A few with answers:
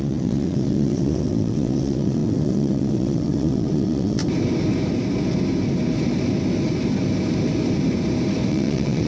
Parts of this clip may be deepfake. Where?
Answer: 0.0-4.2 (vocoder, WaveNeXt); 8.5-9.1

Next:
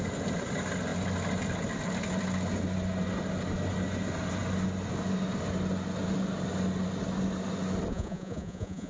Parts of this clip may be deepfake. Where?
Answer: 7.9-8.9 (vocoder, Vocos)

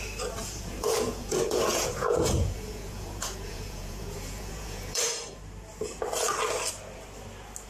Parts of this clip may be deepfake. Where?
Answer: 0.4-5.0 (vocoder, Vocos)

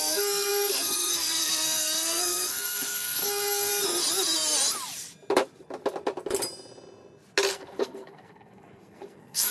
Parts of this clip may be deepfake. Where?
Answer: 0.0-3.7 (codec, SNAC); 7.5-9.5